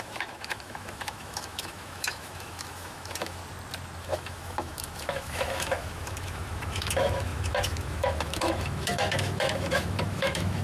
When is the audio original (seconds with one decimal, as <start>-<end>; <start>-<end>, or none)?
3.4-4.0